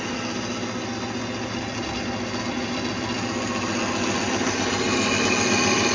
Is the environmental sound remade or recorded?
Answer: recorded